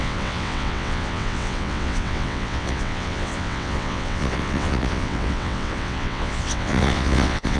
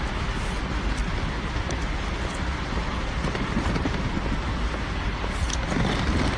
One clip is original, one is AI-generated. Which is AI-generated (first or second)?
first